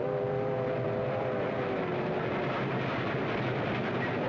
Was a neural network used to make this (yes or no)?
no